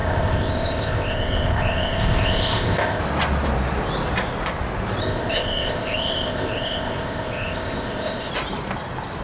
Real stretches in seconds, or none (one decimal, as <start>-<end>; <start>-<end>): 3.0-5.0; 8.3-9.2